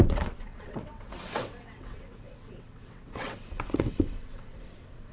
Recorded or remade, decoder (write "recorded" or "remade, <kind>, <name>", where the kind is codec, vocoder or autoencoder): remade, vocoder, WaveNeXt